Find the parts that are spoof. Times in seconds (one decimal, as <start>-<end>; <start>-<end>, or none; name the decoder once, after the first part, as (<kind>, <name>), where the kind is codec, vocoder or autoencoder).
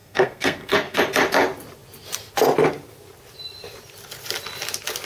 0.0-1.0 (codec, SNAC)